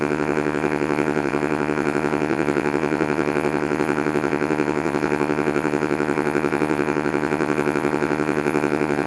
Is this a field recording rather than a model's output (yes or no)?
no